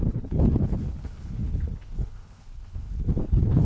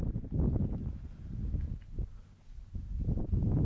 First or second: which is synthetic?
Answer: first